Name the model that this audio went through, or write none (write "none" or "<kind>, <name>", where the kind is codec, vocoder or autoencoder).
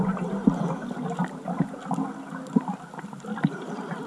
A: none